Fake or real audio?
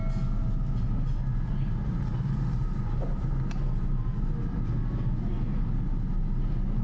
real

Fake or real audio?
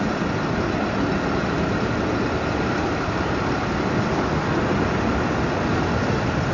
real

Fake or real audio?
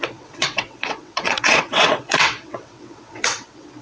fake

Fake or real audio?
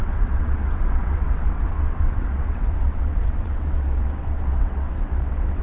fake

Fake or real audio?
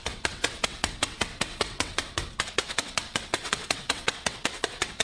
fake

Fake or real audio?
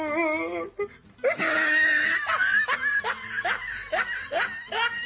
real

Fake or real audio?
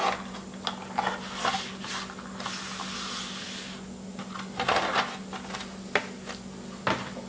real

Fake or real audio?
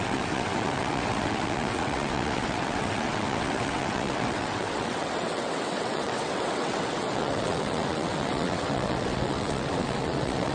fake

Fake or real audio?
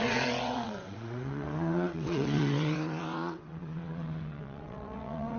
fake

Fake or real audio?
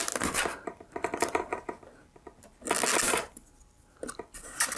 real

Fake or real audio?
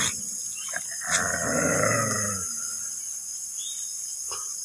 real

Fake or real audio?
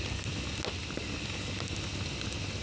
real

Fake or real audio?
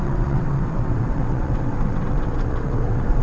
fake